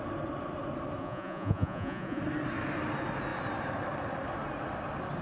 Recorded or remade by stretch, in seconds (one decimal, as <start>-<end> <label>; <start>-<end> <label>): 0.0-1.0 recorded; 1.0-2.2 remade; 2.2-5.2 recorded